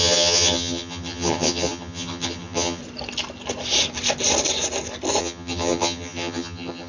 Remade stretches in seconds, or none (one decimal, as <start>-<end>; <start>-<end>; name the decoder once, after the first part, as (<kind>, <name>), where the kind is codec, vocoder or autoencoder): 0.0-2.8 (vocoder, HiFi-GAN); 5.2-6.9